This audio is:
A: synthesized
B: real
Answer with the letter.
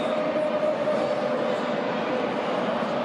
B